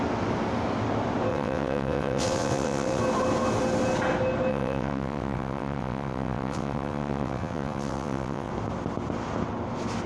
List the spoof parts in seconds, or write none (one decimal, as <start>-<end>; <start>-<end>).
1.3-3.0; 4.5-8.5